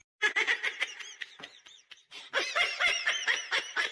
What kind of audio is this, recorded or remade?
recorded